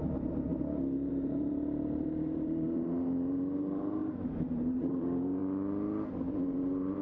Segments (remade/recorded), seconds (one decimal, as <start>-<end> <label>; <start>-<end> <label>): 0.0-0.5 remade; 0.5-1.1 recorded; 1.1-5.4 remade; 5.4-6.3 recorded; 6.3-7.0 remade